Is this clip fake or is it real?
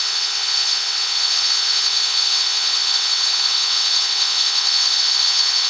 fake